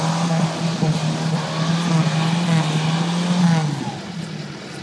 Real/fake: real